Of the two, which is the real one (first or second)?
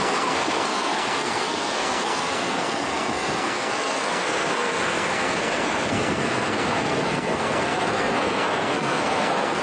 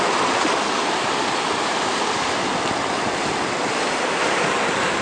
second